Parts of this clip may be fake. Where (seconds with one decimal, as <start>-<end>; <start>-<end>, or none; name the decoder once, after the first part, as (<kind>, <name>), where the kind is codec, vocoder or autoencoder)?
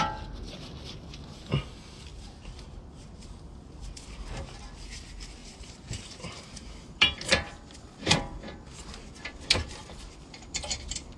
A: 5.4-7.3 (vocoder, BigVGAN v2)